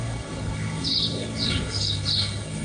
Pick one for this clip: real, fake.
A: fake